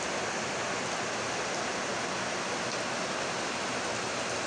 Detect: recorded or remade recorded